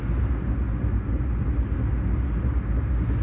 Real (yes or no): yes